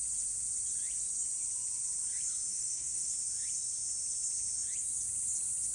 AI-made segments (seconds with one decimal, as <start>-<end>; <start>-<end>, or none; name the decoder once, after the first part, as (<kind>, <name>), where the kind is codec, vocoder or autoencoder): 2.5-3.1 (codec, SNAC)